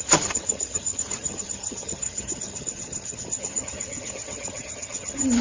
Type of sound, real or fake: fake